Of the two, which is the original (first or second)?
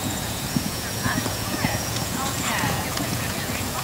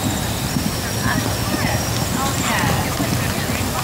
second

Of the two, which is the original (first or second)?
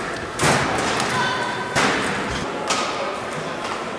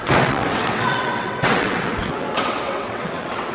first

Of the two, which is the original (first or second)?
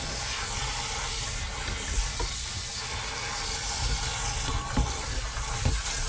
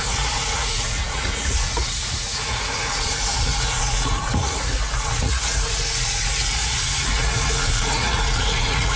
first